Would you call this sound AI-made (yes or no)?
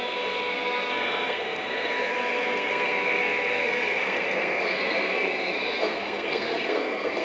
yes